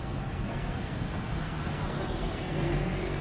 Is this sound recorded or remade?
remade